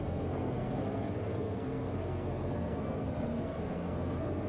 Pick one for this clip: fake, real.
fake